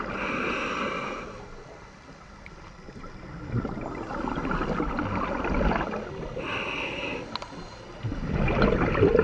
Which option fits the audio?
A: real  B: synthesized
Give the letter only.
A